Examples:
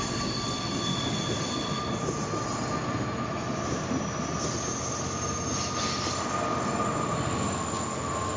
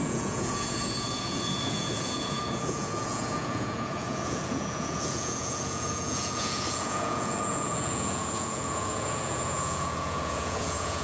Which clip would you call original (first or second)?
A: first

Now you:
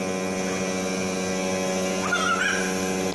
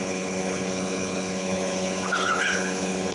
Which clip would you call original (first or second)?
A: first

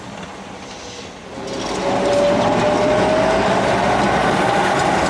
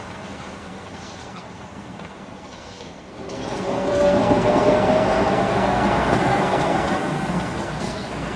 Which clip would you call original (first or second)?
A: first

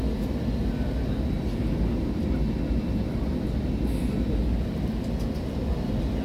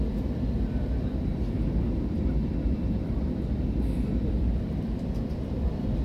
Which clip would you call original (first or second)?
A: first